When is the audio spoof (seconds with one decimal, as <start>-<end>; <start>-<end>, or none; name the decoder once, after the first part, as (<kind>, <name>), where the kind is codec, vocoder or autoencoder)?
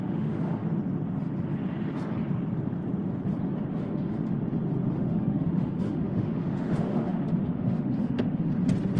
0.0-0.6 (autoencoder, DAC-VAE); 3.7-4.4; 4.9-8.5